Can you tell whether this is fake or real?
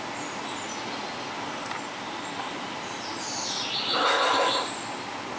real